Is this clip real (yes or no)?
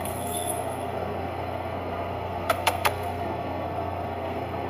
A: no